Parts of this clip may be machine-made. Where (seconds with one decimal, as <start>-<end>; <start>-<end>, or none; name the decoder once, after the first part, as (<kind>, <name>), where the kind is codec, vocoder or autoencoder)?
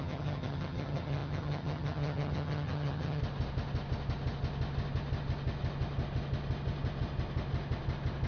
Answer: 0.0-3.2 (vocoder, HiFi-GAN)